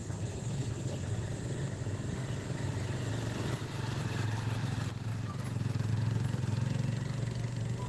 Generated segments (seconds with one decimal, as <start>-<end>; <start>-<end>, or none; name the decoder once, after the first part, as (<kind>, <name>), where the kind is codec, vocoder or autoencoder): 0.0-1.1 (codec, HILCodec)